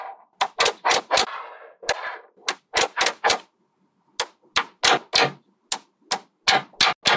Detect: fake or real real